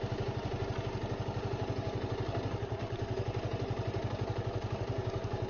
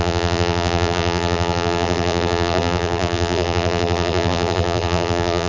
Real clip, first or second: first